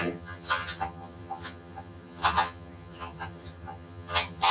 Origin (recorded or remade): remade